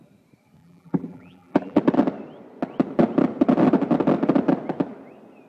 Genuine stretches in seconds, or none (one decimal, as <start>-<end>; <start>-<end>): 0.0-0.6; 1.8-5.5